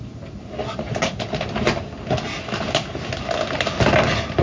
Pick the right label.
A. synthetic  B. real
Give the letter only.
B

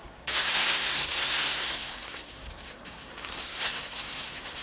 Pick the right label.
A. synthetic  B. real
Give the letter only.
A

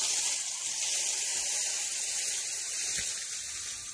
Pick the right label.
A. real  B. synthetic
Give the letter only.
A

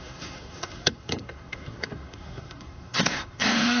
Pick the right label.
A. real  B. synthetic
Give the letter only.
B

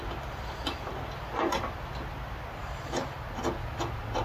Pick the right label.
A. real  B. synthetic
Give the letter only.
A